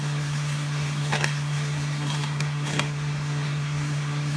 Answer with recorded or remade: remade